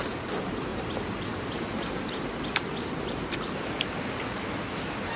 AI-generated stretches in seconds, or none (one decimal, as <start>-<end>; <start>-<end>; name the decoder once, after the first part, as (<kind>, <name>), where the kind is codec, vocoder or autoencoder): 0.7-3.8 (vocoder, BigVGAN v2)